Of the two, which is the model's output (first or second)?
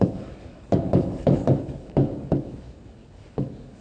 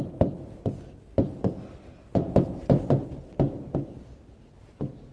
first